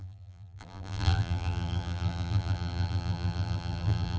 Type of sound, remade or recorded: remade